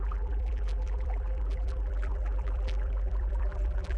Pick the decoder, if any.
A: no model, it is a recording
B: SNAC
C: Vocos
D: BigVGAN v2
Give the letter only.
D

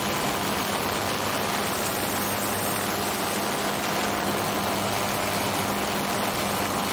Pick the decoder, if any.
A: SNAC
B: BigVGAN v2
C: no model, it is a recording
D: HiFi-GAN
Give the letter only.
C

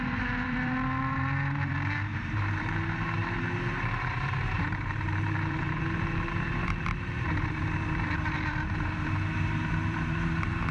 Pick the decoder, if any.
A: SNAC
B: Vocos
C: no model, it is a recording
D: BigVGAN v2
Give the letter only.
D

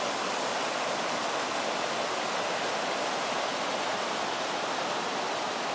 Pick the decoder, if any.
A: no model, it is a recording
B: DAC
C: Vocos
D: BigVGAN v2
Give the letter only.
A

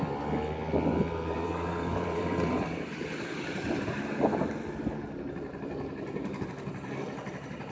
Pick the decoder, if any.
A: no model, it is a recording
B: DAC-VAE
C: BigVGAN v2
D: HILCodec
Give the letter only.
C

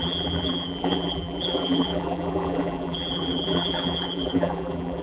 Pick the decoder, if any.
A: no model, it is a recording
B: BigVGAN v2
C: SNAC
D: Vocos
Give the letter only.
B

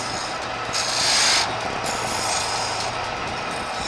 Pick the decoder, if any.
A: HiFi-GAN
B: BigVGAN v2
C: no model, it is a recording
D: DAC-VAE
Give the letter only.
C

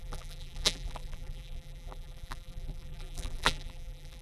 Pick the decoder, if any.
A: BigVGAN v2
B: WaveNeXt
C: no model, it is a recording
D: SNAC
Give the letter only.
A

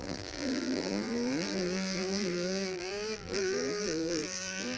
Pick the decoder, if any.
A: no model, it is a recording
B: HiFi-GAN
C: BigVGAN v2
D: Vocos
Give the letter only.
C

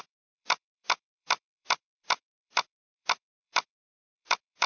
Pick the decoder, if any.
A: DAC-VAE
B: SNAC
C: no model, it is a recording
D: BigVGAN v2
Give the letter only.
D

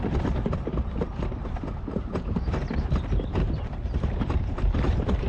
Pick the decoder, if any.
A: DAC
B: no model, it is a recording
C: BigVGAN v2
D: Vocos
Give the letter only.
C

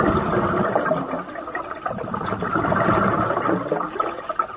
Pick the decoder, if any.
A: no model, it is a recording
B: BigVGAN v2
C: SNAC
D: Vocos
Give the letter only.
A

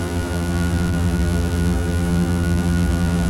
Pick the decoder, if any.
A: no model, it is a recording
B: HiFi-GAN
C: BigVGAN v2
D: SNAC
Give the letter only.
C